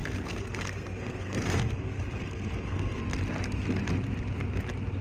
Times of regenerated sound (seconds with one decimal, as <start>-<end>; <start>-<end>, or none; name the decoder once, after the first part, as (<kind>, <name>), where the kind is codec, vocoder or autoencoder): 0.0-3.0 (codec, SNAC)